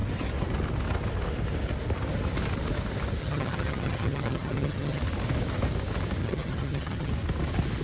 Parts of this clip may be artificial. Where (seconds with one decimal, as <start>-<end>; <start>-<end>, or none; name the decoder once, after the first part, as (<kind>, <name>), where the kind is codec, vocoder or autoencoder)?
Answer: 3.2-5.0 (vocoder, HiFi-GAN); 6.2-7.1